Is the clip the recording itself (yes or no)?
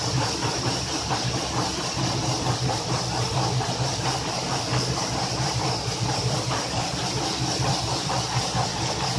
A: no